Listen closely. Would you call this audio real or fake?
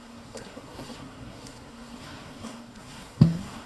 fake